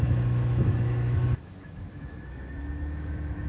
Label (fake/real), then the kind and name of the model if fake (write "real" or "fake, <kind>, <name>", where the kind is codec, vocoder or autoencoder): fake, autoencoder, DAC-VAE